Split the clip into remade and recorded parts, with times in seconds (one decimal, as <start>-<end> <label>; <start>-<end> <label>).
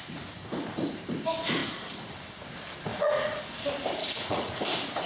0.0-2.9 recorded; 2.9-3.4 remade; 3.4-4.0 recorded; 4.0-4.6 remade; 4.6-5.1 recorded